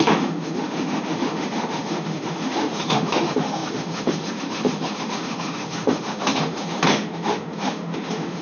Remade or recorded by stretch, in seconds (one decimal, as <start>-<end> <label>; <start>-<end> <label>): 0.0-8.4 remade